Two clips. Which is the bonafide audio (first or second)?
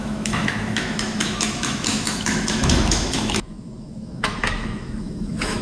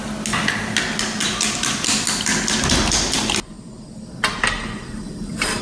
second